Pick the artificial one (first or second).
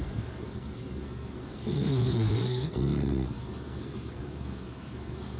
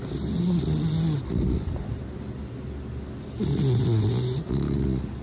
first